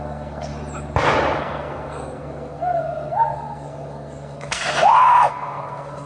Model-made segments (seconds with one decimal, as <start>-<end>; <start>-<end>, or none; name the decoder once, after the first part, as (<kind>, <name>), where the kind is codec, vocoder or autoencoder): 0.0-0.5 (codec, SNAC); 1.4-6.1